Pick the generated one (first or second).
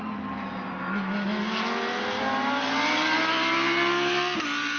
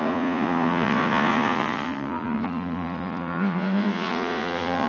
second